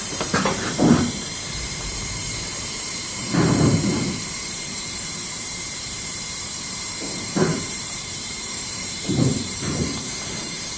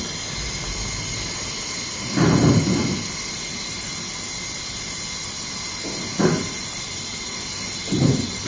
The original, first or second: second